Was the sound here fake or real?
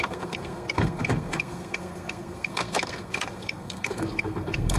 fake